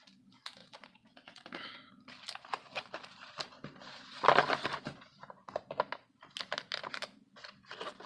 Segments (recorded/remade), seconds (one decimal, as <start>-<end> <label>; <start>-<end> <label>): 0.0-0.6 recorded; 0.6-1.9 remade; 1.9-8.1 recorded

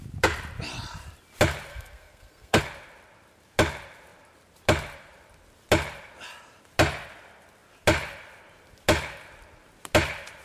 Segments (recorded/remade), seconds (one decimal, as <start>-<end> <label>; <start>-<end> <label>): 0.0-1.7 recorded; 1.7-2.6 remade; 2.6-10.4 recorded

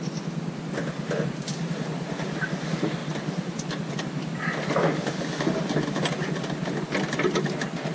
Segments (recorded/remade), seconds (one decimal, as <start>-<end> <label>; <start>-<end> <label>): 0.0-7.9 recorded

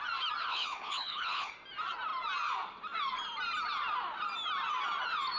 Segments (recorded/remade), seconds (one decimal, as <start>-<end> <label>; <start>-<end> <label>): 0.0-0.4 recorded; 0.4-1.5 remade; 1.5-5.4 recorded